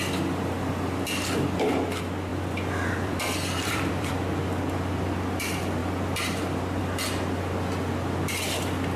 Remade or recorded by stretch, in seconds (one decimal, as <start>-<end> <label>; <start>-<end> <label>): 0.0-2.3 recorded; 2.3-4.1 remade; 4.1-9.0 recorded